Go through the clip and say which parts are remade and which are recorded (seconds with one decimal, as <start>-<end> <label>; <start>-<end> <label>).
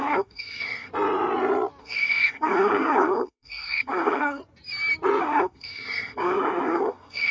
0.0-0.9 remade; 0.9-1.8 recorded; 1.8-4.4 remade; 4.4-5.2 recorded; 5.2-7.3 remade